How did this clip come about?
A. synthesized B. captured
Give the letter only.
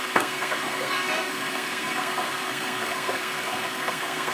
A